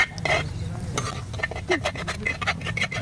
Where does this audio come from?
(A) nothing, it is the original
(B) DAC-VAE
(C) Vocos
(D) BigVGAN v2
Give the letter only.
A